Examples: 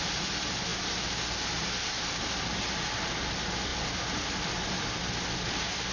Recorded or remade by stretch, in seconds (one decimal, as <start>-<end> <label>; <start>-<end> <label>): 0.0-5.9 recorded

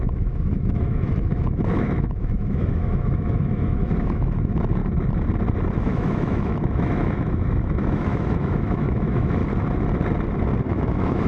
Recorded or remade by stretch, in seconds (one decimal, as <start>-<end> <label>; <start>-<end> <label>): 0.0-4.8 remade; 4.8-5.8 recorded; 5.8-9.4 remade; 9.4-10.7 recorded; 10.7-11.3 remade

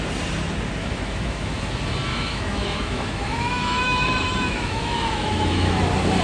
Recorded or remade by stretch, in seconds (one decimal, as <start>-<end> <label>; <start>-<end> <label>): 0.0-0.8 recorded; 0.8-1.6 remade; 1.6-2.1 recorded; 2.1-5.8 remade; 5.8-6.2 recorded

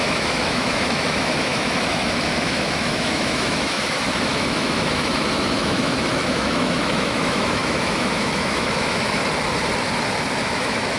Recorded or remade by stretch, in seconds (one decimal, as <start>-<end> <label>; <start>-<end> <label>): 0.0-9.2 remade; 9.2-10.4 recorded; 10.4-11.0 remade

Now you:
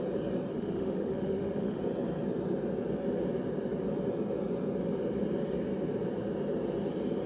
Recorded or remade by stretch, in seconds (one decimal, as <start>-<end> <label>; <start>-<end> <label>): 0.0-0.5 recorded; 0.5-1.8 remade; 1.8-7.3 recorded